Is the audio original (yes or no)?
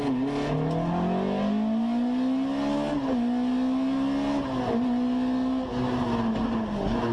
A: yes